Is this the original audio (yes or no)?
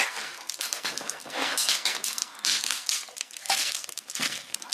no